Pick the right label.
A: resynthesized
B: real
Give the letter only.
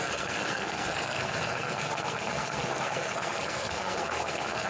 A